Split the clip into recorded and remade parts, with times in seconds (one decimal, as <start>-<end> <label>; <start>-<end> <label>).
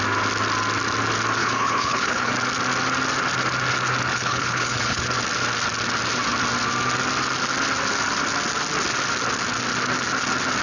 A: 0.0-1.4 recorded; 1.4-2.3 remade; 2.3-4.1 recorded; 4.1-5.0 remade; 5.0-10.6 recorded